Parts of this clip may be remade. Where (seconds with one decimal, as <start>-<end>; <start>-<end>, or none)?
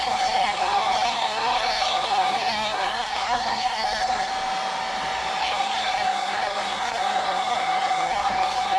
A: 0.0-4.3; 5.4-8.8